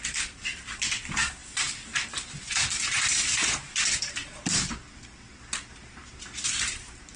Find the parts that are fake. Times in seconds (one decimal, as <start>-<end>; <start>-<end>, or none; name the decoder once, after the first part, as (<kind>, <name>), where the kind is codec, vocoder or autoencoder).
none